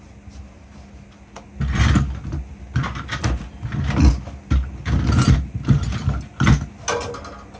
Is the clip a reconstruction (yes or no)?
no